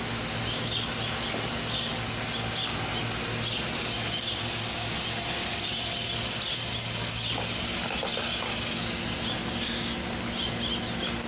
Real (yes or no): yes